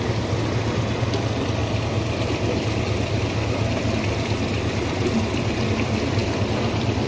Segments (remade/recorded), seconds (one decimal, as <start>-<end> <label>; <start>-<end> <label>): 0.0-7.1 recorded